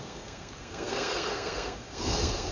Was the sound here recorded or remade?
remade